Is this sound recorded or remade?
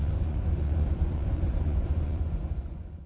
remade